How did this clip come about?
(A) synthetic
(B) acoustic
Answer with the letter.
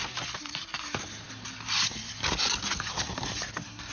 B